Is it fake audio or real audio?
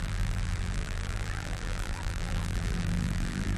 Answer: fake